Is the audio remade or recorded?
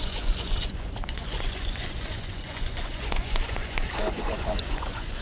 remade